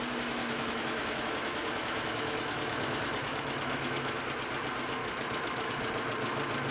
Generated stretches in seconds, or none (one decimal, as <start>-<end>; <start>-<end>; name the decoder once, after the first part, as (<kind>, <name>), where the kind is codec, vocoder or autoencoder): 0.4-4.2 (autoencoder, DAC-VAE); 5.0-5.7